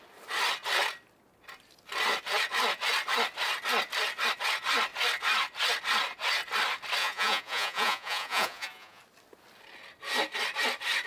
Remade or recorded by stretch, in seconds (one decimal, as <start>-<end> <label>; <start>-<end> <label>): 0.0-7.0 recorded; 7.0-9.0 remade; 9.0-11.1 recorded